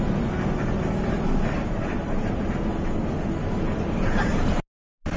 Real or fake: real